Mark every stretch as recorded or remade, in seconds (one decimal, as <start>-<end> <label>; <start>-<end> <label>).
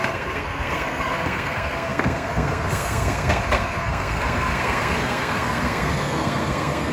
0.0-6.9 remade